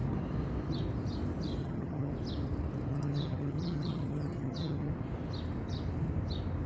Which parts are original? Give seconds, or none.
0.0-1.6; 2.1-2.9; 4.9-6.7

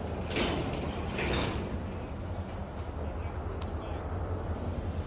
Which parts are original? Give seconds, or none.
0.0-5.1

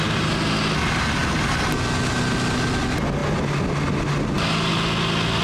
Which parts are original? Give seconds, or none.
0.0-5.4

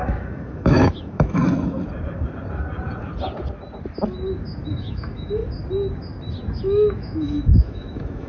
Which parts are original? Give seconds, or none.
1.4-4.7; 5.4-6.6

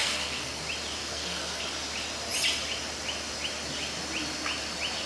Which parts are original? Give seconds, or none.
0.6-1.0; 1.6-5.1

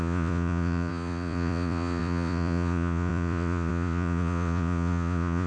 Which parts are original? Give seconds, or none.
none

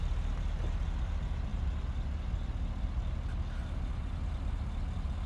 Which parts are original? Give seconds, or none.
0.0-5.3